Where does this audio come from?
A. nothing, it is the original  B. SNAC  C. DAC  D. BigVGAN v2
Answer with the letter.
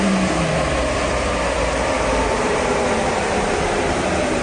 D